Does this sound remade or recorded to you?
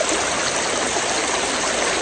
recorded